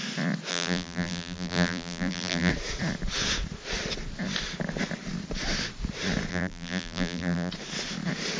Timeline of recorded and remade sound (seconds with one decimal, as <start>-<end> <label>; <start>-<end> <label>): 0.0-0.5 recorded; 0.5-2.5 remade; 2.5-6.3 recorded; 6.3-7.5 remade; 7.5-8.4 recorded